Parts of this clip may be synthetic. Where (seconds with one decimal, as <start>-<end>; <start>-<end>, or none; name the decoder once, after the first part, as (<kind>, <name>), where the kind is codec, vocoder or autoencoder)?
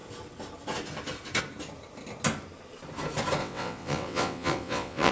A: 3.4-5.1 (vocoder, WaveNeXt)